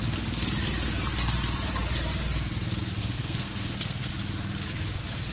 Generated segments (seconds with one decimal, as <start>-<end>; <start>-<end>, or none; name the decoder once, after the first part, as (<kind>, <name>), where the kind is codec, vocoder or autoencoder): 3.0-4.1 (codec, SNAC)